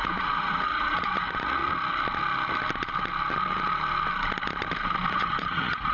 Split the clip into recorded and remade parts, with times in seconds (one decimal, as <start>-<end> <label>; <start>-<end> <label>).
0.0-1.6 remade; 1.6-5.1 recorded; 5.1-5.9 remade